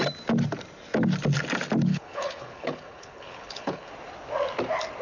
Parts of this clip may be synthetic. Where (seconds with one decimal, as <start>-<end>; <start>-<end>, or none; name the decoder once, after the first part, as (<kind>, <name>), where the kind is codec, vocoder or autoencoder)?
1.9-3.9 (codec, HILCodec)